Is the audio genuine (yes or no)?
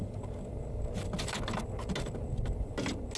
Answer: yes